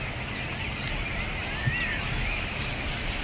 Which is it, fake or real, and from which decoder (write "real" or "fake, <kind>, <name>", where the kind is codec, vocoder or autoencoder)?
real